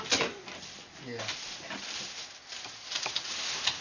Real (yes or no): yes